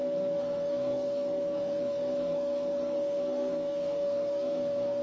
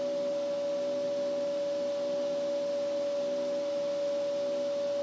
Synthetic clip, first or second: first